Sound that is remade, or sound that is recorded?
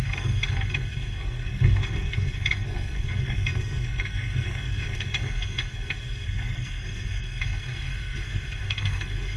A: remade